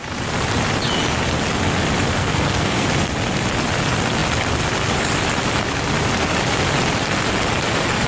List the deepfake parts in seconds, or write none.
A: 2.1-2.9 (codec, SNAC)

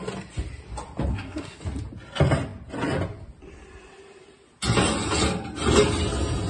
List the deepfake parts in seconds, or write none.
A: 1.1-1.6 (codec, SNAC)

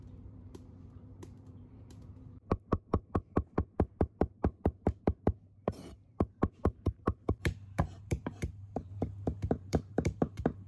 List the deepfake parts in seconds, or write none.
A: 0.0-8.9 (vocoder, BigVGAN v2); 9.5-10.7

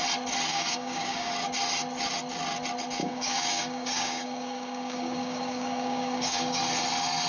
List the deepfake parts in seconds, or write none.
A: 0.5-1.3 (codec, DAC); 3.0-6.6

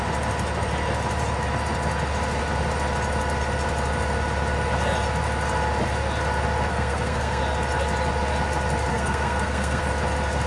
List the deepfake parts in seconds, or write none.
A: 6.7-7.4 (codec, SNAC); 8.9-9.8

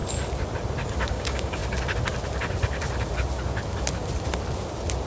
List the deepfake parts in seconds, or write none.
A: 1.1-1.6 (codec, DAC)

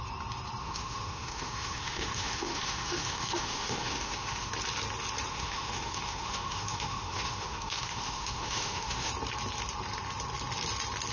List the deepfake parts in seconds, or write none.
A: 0.6-4.5 (autoencoder, DAC-VAE); 5.3-9.1